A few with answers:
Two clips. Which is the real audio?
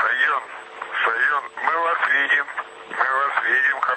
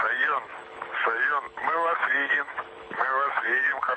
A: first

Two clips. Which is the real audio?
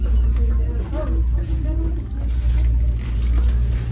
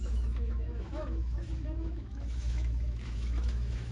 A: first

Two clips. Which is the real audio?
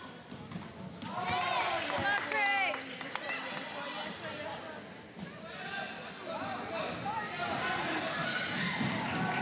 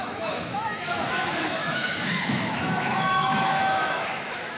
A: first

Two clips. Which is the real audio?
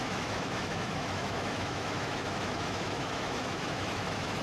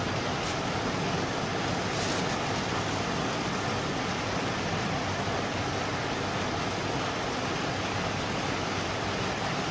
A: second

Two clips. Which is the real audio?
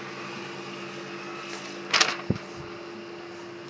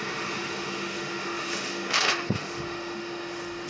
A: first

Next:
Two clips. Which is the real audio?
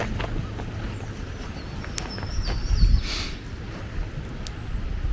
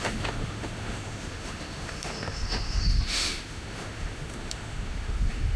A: first